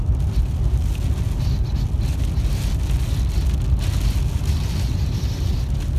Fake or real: real